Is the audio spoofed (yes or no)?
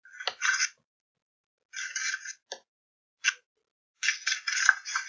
no